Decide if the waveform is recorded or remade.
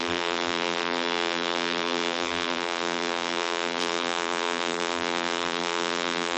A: remade